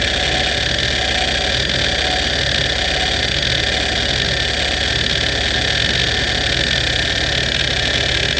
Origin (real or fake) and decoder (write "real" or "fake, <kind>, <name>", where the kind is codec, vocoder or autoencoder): real